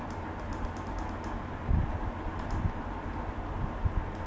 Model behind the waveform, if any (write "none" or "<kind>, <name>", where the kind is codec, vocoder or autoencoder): none